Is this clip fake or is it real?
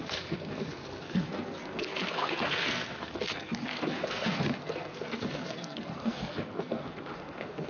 fake